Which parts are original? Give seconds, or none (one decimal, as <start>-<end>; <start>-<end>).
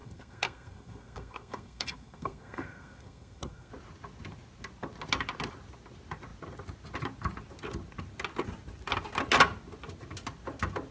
3.7-10.9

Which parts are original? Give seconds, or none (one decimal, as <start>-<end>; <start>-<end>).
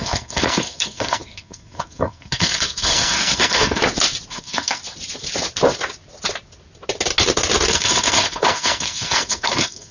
3.8-4.3; 4.8-7.7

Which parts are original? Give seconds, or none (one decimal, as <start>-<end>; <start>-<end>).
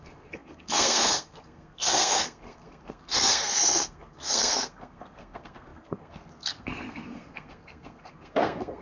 none